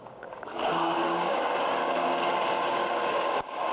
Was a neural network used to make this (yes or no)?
yes